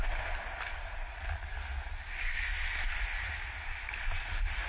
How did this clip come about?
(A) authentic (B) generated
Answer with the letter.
A